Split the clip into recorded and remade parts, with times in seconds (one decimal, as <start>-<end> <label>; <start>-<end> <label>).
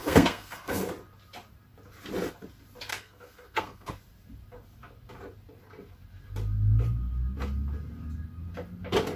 0.0-0.9 remade; 0.9-2.9 recorded; 2.9-3.9 remade; 3.9-9.2 recorded